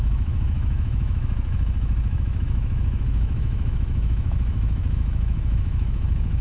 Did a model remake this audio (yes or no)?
yes